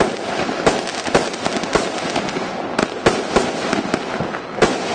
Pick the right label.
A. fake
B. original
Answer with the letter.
B